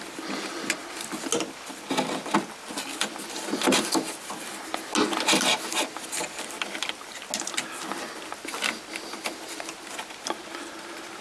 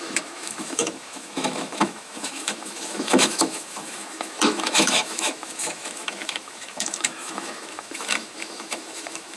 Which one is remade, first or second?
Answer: second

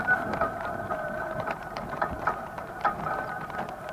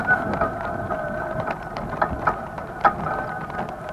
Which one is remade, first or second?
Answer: first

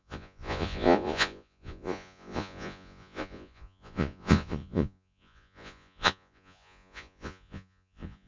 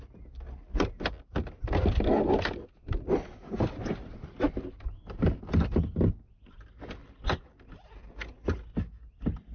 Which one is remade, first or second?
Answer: first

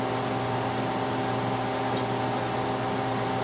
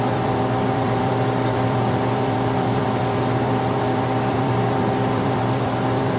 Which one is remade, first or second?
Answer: second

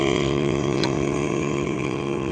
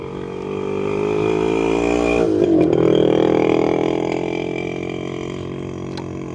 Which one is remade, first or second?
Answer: first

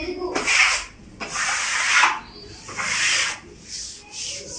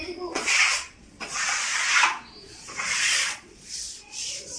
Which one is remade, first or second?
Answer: second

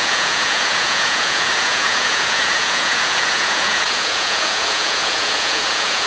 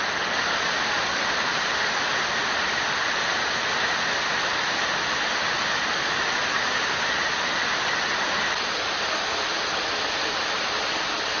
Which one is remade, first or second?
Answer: first